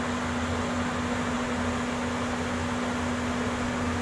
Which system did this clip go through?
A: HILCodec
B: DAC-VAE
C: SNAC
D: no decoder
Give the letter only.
D